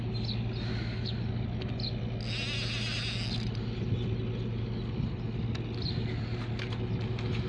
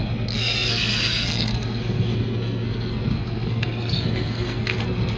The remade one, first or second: second